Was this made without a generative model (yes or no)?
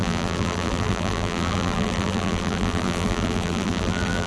no